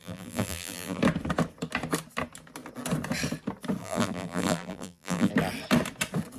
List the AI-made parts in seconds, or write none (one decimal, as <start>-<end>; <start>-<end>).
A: 0.0-1.0; 3.8-5.3